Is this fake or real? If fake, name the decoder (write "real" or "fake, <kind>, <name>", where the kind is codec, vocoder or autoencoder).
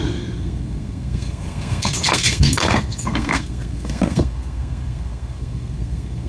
fake, codec, SNAC